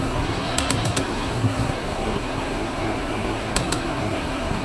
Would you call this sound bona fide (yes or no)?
no